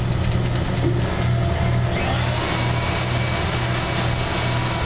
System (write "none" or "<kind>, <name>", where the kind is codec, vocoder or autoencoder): none